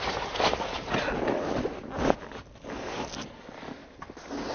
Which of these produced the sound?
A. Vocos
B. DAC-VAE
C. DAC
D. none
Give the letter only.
D